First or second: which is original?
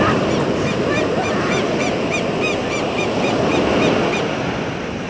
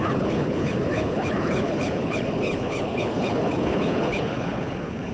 first